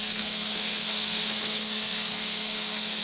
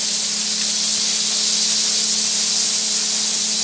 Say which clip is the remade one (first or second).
first